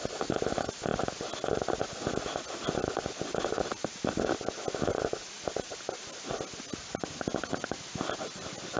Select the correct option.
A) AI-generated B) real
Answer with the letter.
B